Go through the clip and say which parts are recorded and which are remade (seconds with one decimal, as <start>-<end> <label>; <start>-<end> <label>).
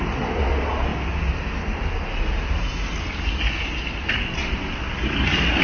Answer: 0.0-5.6 recorded